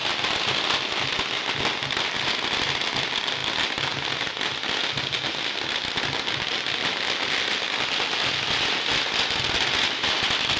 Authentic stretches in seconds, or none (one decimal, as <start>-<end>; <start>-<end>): 0.0-10.6